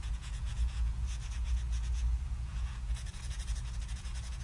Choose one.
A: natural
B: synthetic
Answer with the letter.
B